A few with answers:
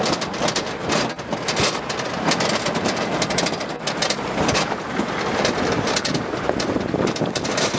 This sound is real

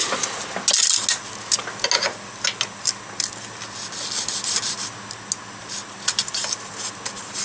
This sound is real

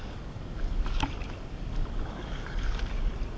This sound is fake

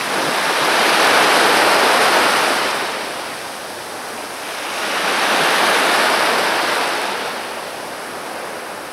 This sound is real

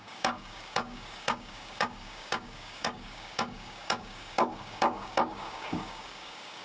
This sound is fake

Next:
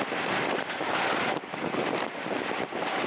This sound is real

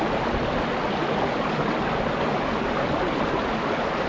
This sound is real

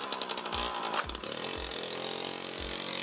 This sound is real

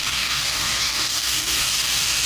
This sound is fake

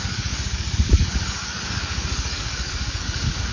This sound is fake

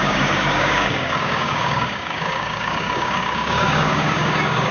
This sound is fake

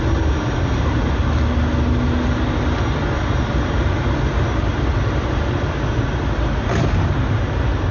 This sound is real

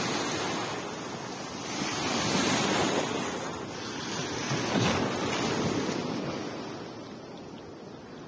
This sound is real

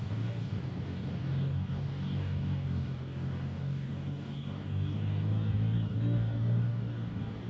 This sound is fake